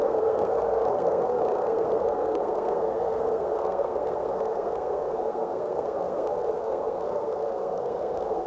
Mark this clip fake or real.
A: fake